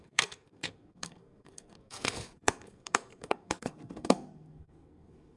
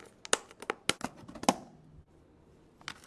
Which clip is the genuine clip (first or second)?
second